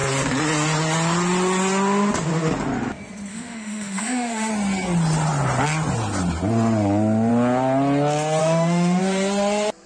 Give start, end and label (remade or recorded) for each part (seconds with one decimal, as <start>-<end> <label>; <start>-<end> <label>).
0.0-3.3 recorded; 3.3-4.5 remade; 4.5-8.4 recorded; 8.4-9.0 remade; 9.0-9.9 recorded